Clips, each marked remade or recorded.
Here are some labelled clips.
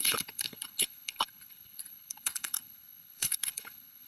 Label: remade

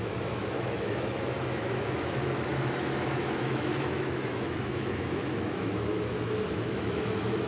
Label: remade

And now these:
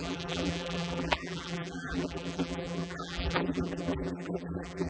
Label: remade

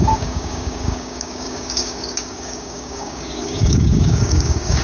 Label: remade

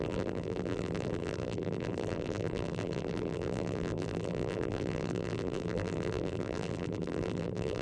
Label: remade